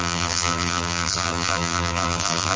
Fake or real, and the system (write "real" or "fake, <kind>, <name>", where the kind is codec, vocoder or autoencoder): fake, vocoder, BigVGAN v2